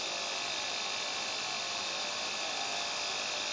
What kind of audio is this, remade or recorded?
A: recorded